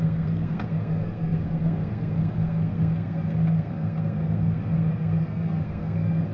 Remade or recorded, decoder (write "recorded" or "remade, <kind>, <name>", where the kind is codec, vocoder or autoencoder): remade, codec, SNAC